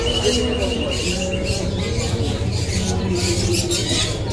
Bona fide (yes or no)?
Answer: yes